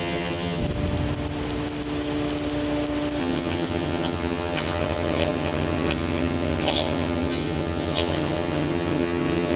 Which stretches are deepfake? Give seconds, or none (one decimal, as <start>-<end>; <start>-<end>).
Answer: 0.0-0.6; 3.2-9.6